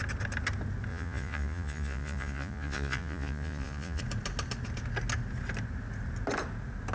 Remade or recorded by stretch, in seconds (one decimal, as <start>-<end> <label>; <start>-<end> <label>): 0.0-0.9 recorded; 0.9-4.0 remade; 4.0-6.9 recorded